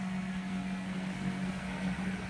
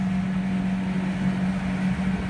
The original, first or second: second